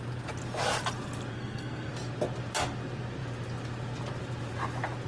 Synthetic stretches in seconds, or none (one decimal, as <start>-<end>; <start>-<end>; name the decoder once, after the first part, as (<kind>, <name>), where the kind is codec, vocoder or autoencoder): 1.3-1.9 (codec, SNAC)

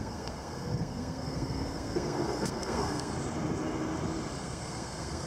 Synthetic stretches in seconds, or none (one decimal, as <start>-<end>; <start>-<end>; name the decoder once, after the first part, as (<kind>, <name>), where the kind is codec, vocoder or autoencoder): 0.0-3.1 (codec, SNAC); 4.4-5.3

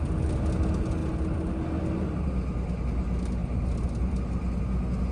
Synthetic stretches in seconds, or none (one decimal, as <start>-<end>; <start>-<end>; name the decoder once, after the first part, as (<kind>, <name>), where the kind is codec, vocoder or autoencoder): none

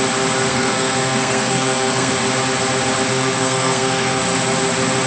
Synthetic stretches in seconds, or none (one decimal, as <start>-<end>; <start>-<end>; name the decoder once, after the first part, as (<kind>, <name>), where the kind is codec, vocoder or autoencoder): 0.5-2.1 (codec, SNAC); 3.1-4.2

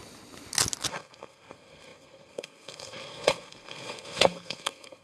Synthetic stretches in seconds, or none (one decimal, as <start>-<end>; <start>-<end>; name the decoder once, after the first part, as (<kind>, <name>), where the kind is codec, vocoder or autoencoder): 0.9-5.0 (codec, SNAC)